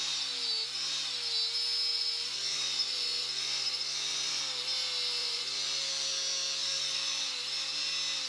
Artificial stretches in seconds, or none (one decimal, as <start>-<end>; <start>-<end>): 1.9-4.4; 5.2-5.8; 6.6-7.3